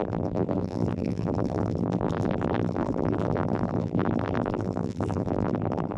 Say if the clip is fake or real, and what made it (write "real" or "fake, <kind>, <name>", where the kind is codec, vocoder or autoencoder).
fake, vocoder, BigVGAN v2